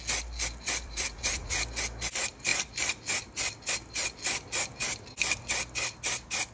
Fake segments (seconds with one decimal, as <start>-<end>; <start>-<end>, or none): 0.8-1.6